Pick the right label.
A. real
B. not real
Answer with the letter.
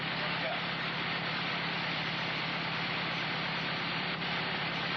B